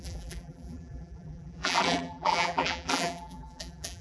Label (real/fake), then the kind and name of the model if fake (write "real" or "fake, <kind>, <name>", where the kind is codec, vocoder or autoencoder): fake, vocoder, BigVGAN v2